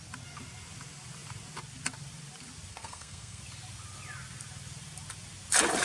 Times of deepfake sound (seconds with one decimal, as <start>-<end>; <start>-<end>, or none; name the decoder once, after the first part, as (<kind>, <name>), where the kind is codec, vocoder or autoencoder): 2.7-3.4 (codec, SNAC)